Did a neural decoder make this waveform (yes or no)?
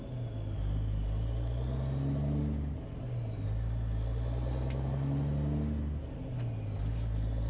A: no